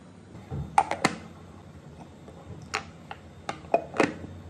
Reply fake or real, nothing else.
real